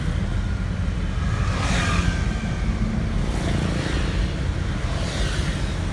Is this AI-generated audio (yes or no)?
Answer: no